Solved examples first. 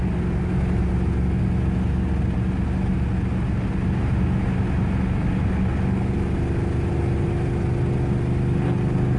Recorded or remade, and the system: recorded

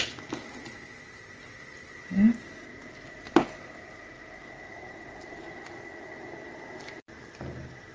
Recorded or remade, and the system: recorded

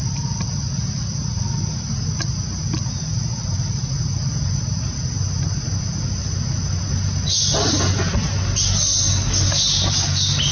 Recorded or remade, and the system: recorded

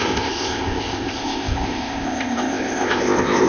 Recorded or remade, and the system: remade, codec, ZipCodec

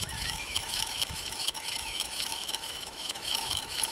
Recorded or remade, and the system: remade, autoencoder, DAC-VAE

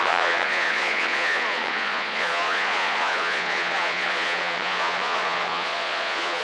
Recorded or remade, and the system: remade, vocoder, Vocos